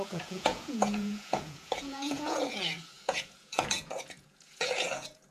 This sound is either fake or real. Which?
fake